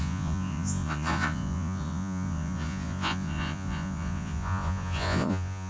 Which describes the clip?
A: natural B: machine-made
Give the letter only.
B